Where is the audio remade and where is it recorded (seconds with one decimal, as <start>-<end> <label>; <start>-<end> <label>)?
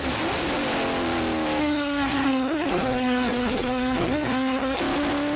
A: 0.0-1.6 recorded; 1.6-4.8 remade; 4.8-5.4 recorded